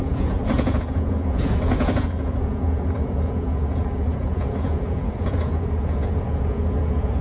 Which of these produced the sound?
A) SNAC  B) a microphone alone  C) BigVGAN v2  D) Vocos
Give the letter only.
D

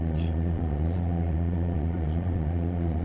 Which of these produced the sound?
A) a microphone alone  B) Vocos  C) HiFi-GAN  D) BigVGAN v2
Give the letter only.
B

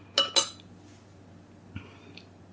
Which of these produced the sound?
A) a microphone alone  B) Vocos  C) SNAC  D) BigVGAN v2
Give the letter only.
A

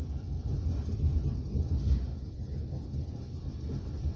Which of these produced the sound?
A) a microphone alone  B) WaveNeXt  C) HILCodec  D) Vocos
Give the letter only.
A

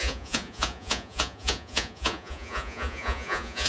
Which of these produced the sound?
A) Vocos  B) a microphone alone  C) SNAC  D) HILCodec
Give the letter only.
A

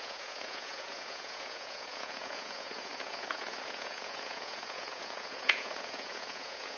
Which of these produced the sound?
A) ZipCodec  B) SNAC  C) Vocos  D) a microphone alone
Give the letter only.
C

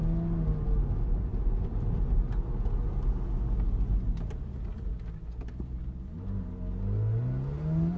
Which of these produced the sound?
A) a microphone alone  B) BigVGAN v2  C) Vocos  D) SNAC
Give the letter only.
A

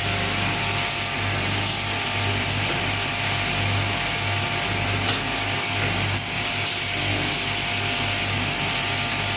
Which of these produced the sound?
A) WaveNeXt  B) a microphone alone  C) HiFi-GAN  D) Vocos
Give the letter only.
B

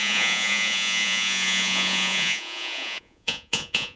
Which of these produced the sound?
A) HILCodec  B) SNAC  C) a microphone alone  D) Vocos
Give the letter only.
D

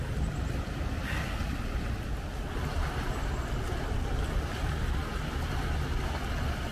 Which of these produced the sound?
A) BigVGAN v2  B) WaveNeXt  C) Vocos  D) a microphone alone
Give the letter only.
D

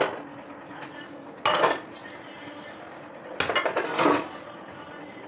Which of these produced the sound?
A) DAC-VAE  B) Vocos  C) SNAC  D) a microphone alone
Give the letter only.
D